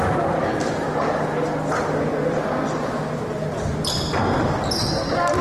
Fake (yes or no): no